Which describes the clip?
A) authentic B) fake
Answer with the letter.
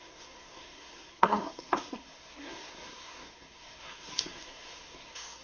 B